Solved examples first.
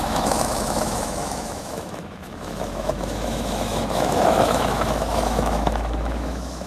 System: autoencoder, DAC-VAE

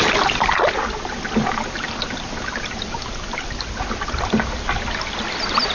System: none